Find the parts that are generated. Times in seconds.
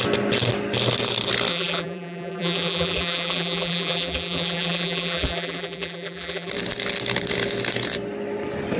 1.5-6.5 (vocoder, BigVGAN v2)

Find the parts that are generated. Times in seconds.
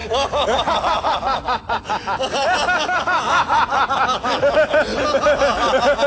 0.0-3.0 (vocoder, BigVGAN v2)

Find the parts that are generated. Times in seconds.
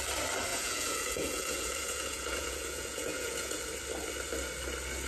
0.5-3.6 (vocoder, Vocos)